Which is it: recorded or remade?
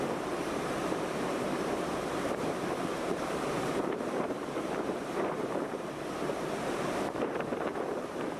remade